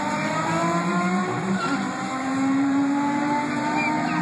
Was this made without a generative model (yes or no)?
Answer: no